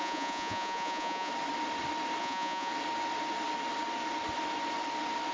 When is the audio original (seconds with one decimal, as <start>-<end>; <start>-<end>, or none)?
1.3-2.2; 2.7-5.3